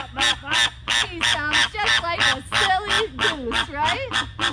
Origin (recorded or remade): recorded